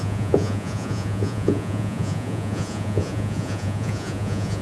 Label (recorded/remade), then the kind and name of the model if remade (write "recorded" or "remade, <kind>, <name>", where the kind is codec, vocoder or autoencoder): remade, vocoder, Vocos